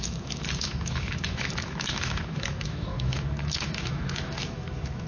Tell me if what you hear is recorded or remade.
remade